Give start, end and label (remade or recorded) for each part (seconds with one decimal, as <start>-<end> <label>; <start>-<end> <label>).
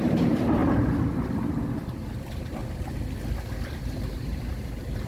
0.0-0.6 remade; 0.6-2.2 recorded; 2.2-2.6 remade; 2.6-3.5 recorded; 3.5-5.1 remade